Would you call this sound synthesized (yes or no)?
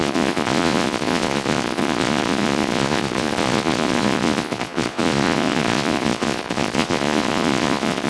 yes